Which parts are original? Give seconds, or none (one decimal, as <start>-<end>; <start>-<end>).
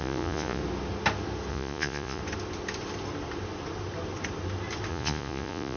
0.6-1.5; 2.2-4.9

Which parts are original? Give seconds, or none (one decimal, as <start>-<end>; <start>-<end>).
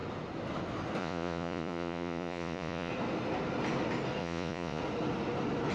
0.0-1.0; 2.9-4.2; 4.8-5.7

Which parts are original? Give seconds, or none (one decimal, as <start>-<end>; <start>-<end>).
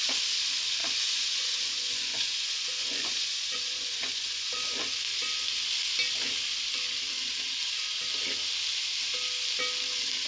0.0-0.8; 4.5-10.3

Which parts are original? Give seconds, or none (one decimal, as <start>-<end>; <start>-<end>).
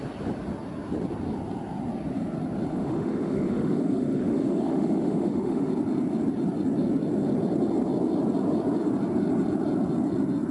0.0-2.7; 5.7-10.5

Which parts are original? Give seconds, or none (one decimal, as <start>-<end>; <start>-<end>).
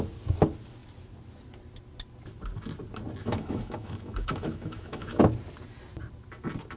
0.0-3.2; 5.2-6.8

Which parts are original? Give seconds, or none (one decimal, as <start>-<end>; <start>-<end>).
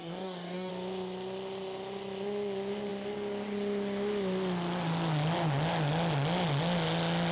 0.7-7.3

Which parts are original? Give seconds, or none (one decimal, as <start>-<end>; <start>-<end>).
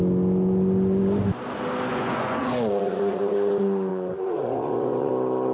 0.0-1.9; 3.5-3.9; 5.1-5.5